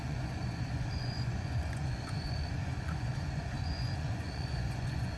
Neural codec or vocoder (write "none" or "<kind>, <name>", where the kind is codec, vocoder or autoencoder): vocoder, Vocos